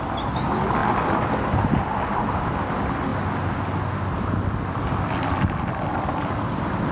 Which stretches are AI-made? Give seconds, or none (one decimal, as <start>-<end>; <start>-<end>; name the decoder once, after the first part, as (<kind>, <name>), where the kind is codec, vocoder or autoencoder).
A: none

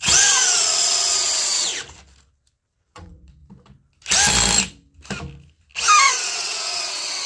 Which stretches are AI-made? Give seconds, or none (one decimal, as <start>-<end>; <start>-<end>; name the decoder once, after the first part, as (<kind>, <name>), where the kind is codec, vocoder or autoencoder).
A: 0.0-1.7 (vocoder, WaveNeXt); 2.8-3.4; 6.1-7.3

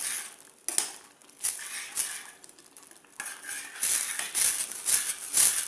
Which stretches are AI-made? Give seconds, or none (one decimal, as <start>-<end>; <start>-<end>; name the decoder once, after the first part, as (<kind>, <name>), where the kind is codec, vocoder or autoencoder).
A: none